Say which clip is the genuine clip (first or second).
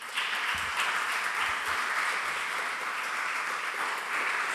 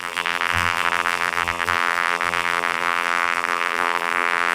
first